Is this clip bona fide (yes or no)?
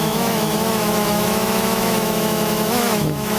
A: no